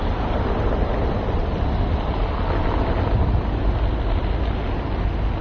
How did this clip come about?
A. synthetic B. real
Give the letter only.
B